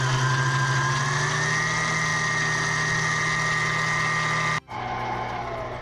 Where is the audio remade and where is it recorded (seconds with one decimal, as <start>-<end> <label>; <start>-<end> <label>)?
0.0-5.8 recorded